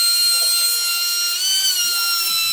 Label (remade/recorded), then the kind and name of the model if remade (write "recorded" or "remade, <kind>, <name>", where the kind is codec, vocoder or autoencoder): recorded